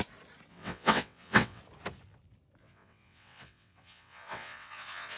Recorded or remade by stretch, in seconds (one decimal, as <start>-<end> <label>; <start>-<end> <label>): 0.0-0.5 recorded; 0.5-1.6 remade; 1.6-2.6 recorded; 2.6-5.2 remade